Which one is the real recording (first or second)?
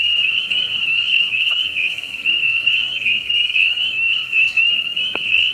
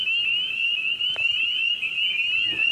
second